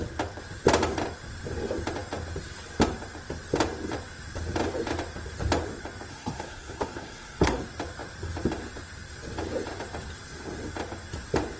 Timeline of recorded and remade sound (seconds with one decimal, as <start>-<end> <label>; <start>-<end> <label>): 0.0-6.1 recorded; 6.1-7.6 remade; 7.6-11.6 recorded